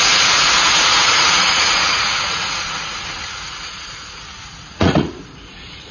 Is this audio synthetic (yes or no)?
yes